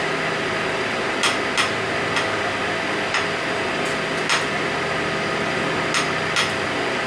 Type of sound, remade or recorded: recorded